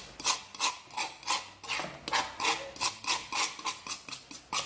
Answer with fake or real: real